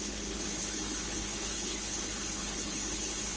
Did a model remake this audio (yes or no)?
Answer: yes